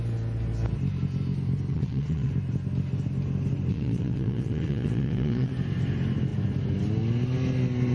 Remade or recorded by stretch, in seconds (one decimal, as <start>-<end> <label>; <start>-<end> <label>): 0.0-1.7 recorded; 1.7-2.3 remade; 2.3-3.7 recorded; 3.7-5.5 remade; 5.5-7.9 recorded